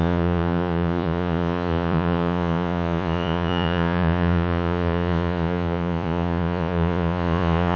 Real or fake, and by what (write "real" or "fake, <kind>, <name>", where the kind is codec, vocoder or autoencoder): fake, vocoder, Vocos